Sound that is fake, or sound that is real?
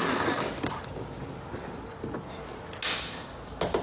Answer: real